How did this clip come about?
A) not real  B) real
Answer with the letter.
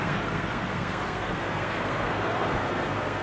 A